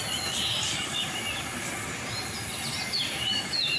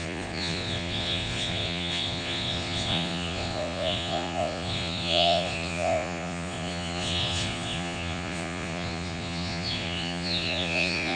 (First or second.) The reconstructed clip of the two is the second